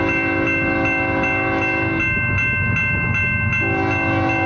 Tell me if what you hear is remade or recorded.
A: recorded